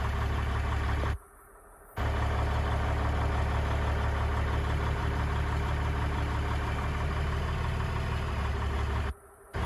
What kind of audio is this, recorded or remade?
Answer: recorded